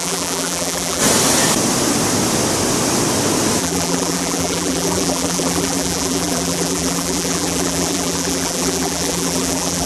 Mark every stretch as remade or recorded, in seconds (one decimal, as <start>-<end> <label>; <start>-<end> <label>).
0.0-1.0 remade; 1.0-3.6 recorded; 3.6-9.9 remade